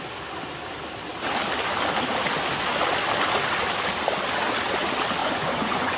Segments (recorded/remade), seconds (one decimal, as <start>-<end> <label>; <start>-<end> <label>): 0.0-5.2 recorded; 5.2-6.0 remade